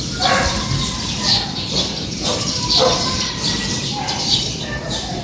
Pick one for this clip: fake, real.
fake